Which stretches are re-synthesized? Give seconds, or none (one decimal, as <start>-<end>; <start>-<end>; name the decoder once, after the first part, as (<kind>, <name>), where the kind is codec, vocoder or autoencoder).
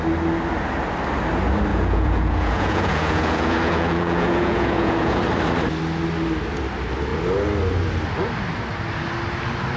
1.7-5.2 (vocoder, Vocos)